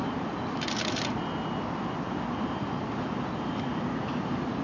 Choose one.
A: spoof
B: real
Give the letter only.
B